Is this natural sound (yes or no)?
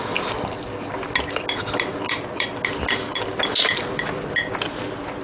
yes